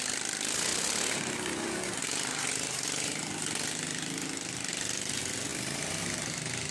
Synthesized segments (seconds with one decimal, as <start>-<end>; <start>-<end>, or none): none